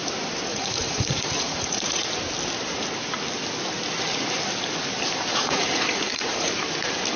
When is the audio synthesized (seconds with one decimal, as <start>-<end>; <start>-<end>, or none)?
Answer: 0.5-2.1; 5.3-6.5